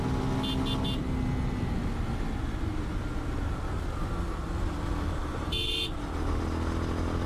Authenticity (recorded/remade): recorded